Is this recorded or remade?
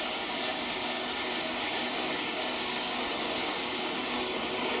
remade